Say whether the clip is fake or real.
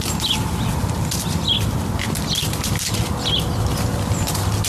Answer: real